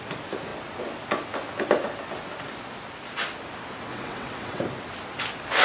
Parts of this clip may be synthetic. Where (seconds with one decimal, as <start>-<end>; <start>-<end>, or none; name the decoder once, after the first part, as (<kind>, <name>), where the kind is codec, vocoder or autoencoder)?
3.9-4.6 (vocoder, WaveNeXt)